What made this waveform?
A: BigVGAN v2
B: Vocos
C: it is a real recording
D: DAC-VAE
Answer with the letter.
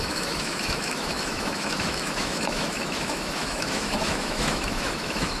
D